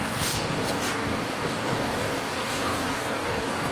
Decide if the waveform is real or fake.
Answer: fake